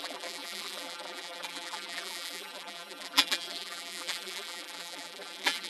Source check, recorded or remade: remade